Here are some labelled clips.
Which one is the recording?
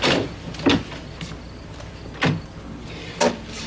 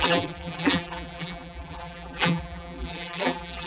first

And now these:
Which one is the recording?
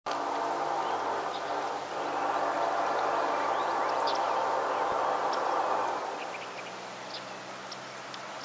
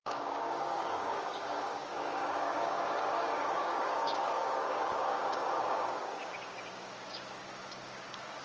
first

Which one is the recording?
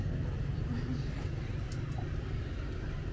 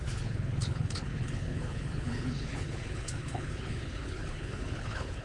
first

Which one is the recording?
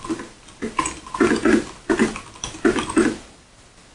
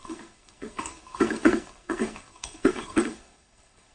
first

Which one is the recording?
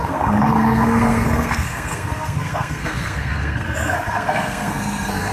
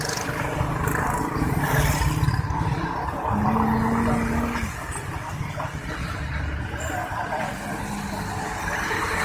second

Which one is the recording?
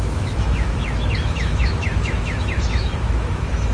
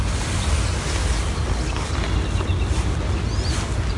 second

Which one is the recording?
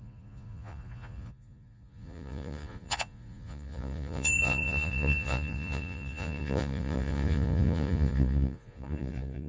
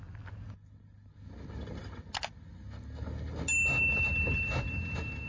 second